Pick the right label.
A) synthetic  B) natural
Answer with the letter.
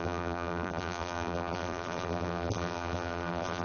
A